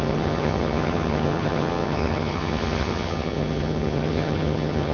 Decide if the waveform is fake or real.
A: fake